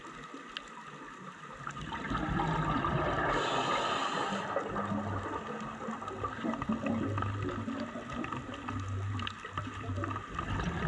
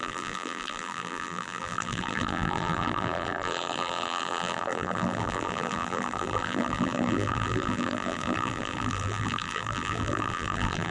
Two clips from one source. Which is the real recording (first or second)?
first